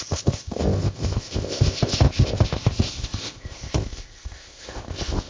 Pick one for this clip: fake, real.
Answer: fake